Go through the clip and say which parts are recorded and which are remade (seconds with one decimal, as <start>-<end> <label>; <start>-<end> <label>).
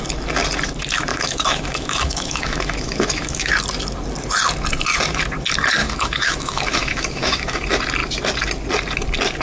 0.0-1.1 recorded; 1.1-3.5 remade; 3.5-5.8 recorded; 5.8-7.6 remade; 7.6-9.4 recorded